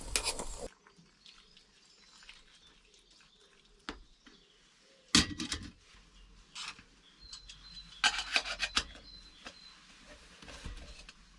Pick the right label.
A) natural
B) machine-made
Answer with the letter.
A